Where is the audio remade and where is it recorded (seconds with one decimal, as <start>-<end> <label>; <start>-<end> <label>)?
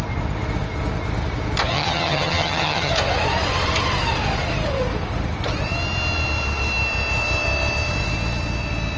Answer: 0.0-1.7 recorded; 1.7-2.9 remade; 2.9-9.0 recorded